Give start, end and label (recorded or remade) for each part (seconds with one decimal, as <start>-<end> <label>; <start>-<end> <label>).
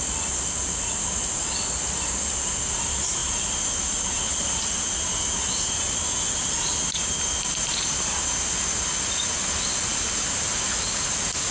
0.0-11.5 recorded